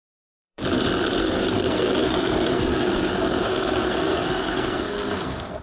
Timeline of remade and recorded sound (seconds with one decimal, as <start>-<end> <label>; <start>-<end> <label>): 0.0-0.6 remade; 0.6-1.2 recorded; 1.2-5.6 remade